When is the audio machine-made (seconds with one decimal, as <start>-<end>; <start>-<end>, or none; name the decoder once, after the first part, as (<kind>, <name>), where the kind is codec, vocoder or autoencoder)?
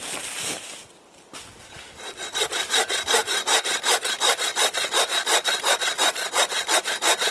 none